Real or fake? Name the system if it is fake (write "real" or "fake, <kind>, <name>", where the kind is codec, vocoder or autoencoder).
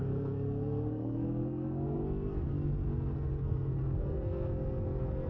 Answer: fake, codec, SNAC